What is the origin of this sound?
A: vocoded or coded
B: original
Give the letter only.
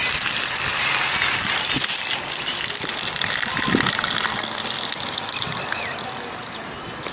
B